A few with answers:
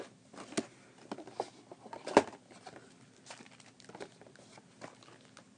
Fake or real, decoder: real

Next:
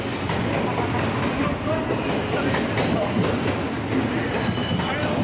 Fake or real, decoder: real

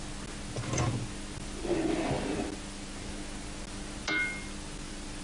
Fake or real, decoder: real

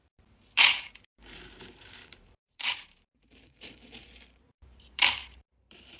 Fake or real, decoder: fake, vocoder, BigVGAN v2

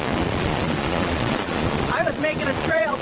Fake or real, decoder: fake, vocoder, Vocos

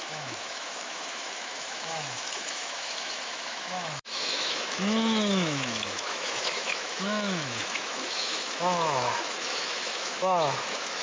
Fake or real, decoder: fake, autoencoder, DAC-VAE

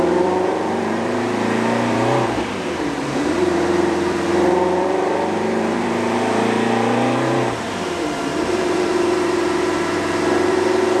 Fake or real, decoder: fake, vocoder, BigVGAN v2